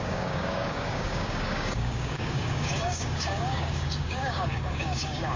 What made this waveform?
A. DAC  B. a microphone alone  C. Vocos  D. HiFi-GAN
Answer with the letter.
A